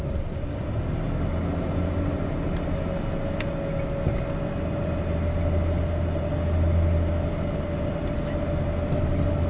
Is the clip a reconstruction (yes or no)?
no